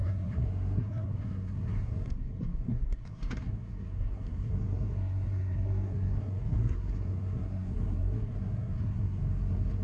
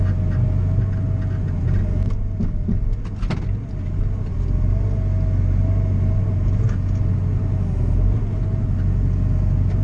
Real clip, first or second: second